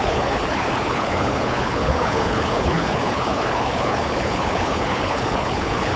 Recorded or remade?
remade